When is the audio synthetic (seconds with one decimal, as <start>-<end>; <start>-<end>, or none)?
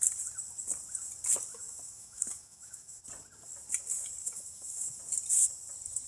1.5-3.0; 4.2-5.0